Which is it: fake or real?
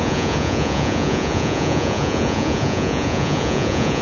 fake